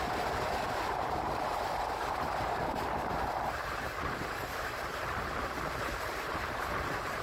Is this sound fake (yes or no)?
yes